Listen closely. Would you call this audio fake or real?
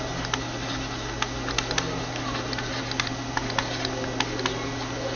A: real